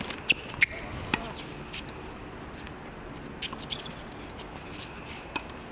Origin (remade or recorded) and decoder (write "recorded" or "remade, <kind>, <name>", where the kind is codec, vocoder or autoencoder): recorded